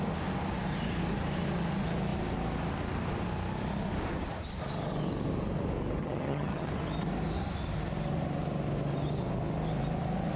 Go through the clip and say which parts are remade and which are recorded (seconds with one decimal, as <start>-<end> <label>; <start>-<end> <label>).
0.0-6.0 recorded; 6.0-6.7 remade; 6.7-10.4 recorded